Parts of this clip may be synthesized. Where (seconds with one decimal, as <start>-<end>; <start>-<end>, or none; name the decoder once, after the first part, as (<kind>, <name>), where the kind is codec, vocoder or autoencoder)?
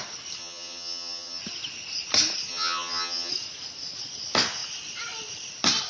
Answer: 0.4-1.4 (vocoder, HiFi-GAN); 2.5-3.3